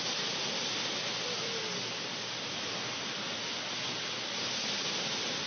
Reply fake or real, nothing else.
real